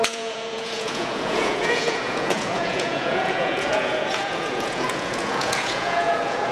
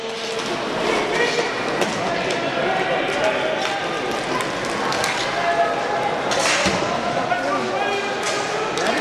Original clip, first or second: second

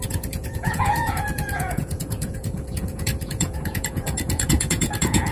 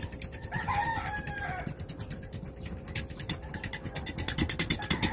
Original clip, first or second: second